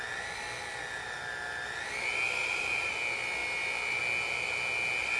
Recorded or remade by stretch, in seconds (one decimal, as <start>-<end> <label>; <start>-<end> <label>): 0.0-2.4 recorded; 2.4-2.9 remade; 2.9-5.2 recorded